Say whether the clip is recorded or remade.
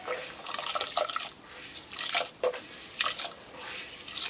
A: recorded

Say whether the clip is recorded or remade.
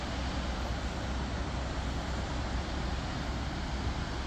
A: recorded